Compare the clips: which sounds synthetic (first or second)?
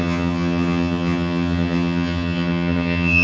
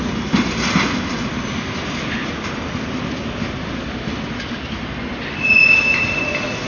first